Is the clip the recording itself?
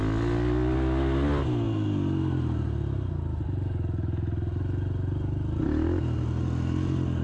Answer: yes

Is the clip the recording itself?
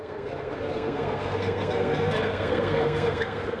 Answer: no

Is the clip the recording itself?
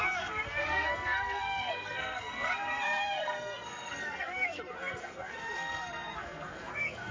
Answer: no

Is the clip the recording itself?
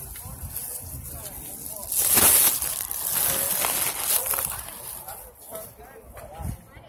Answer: yes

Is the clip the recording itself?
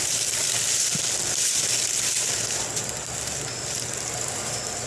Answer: yes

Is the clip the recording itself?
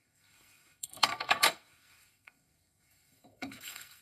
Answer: no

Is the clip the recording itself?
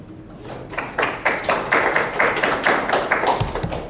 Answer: yes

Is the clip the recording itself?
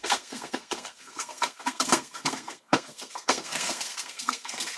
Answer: no